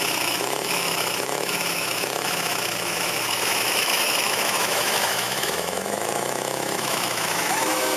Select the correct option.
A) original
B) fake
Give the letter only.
B